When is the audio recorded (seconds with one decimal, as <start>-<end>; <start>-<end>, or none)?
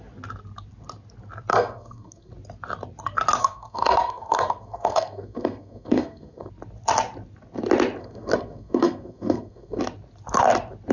0.0-1.5; 2.3-3.4; 6.5-8.0; 9.8-10.9